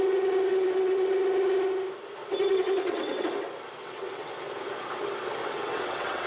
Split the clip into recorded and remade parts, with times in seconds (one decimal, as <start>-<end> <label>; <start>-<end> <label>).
0.0-0.5 recorded; 0.5-1.1 remade; 1.1-2.5 recorded; 2.5-3.3 remade; 3.3-3.8 recorded; 3.8-4.3 remade; 4.3-5.4 recorded; 5.4-6.3 remade